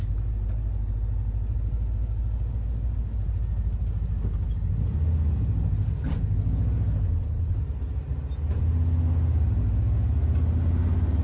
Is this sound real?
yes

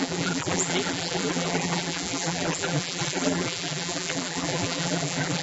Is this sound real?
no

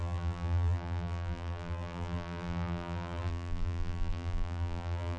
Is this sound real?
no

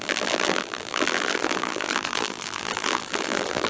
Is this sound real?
no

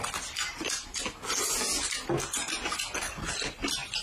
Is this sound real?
yes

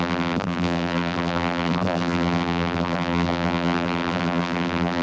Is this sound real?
no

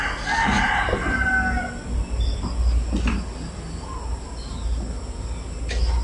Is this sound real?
yes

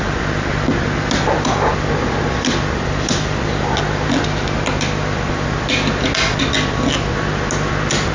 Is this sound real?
yes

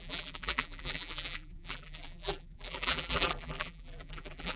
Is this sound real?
no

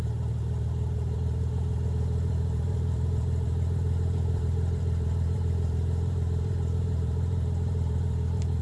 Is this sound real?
no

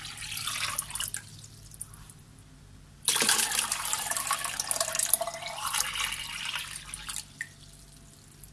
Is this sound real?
yes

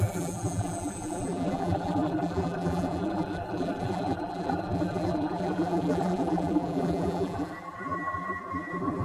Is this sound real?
no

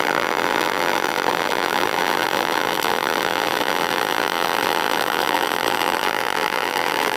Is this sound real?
no